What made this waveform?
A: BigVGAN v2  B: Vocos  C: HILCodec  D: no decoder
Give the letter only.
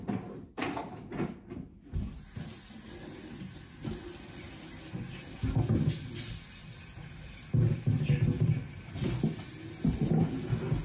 D